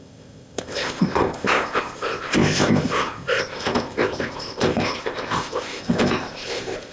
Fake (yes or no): yes